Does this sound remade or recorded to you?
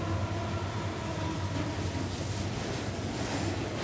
recorded